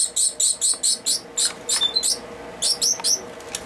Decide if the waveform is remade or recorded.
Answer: recorded